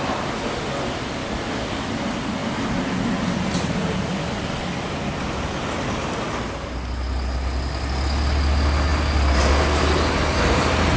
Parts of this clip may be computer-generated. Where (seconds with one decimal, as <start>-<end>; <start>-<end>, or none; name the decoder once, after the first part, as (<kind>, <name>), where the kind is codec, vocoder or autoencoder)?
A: none